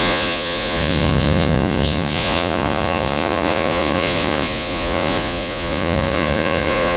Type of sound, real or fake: fake